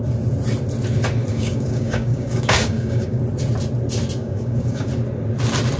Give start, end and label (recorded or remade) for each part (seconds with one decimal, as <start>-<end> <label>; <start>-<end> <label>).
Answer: 0.0-1.3 recorded; 1.3-3.2 remade; 3.2-4.2 recorded; 4.2-4.9 remade; 4.9-5.8 recorded